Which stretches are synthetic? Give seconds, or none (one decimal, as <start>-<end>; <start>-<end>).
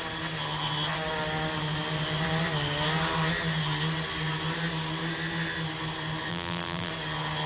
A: 6.3-6.9